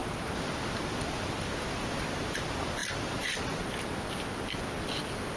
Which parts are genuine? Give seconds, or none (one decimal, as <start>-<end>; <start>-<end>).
0.0-5.4